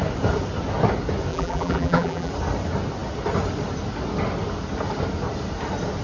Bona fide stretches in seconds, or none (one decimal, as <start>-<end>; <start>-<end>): 0.0-1.3; 2.3-6.0